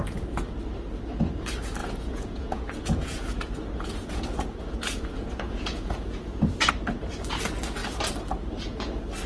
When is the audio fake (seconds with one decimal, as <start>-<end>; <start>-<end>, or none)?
1.8-6.7